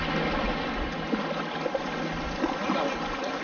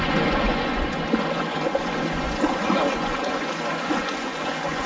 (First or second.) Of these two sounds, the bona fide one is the first